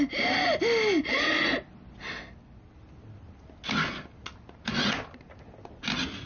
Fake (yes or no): no